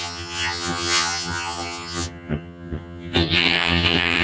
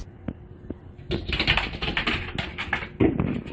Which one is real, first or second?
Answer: second